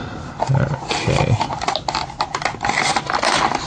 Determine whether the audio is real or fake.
real